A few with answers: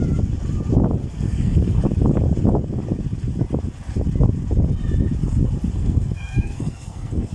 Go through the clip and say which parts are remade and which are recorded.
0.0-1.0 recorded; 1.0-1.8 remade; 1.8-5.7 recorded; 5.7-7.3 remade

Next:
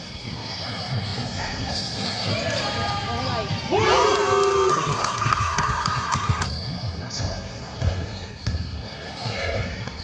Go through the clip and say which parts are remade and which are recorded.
0.0-2.3 remade; 2.3-4.7 recorded; 4.7-10.0 remade

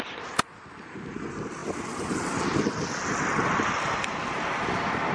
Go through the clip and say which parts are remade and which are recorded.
0.0-5.1 recorded

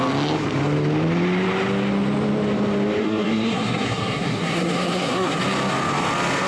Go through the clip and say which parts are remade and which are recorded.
0.0-3.0 recorded; 3.0-5.4 remade; 5.4-6.5 recorded

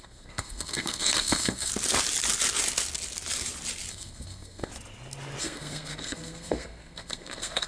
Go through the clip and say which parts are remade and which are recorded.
0.0-1.7 remade; 1.7-3.9 recorded; 3.9-4.7 remade; 4.7-5.4 recorded; 5.4-7.7 remade